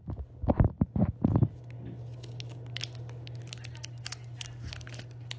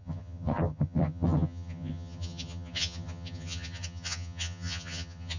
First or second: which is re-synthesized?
second